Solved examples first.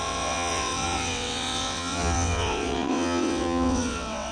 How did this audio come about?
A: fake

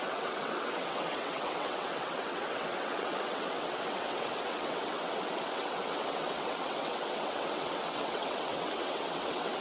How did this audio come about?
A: fake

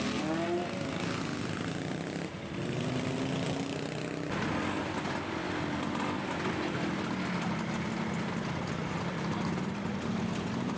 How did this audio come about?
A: real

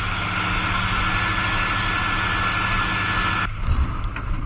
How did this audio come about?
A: real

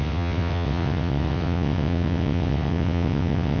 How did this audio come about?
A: fake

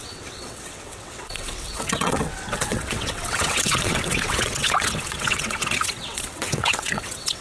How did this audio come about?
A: fake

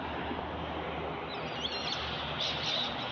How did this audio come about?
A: real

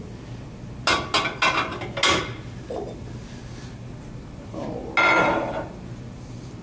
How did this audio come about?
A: real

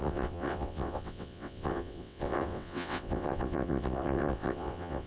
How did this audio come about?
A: fake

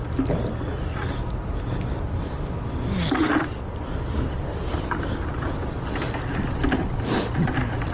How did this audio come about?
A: real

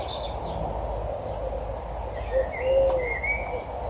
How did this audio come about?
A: real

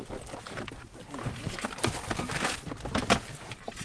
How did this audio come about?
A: real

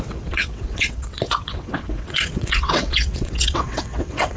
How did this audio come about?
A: fake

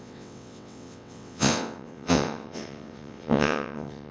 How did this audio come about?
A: fake